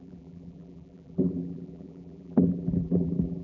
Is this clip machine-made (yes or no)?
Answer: yes